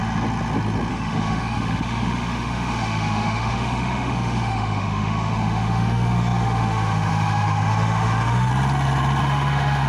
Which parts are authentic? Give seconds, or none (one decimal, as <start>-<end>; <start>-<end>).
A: 0.0-0.9; 8.5-9.2